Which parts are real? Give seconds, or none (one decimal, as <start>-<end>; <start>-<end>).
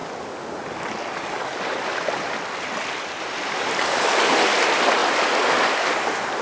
0.0-6.4